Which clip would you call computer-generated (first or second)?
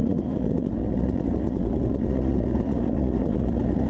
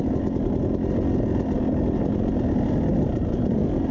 first